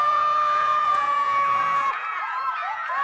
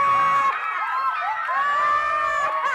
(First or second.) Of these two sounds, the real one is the second